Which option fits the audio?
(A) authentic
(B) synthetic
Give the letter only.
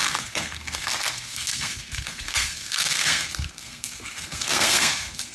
B